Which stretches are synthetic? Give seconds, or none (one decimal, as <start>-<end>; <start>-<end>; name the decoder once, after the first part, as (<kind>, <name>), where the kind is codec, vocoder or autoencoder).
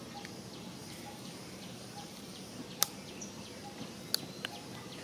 0.8-2.6 (vocoder, BigVGAN v2)